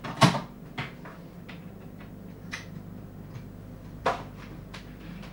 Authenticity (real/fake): real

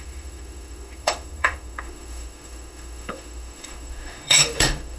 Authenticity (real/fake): fake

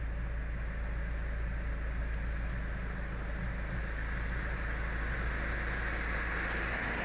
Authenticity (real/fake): real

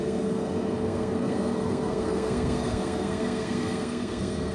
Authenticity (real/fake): fake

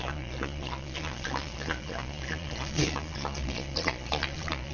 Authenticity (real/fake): fake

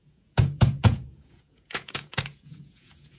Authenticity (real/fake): fake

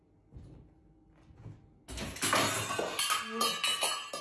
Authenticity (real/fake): real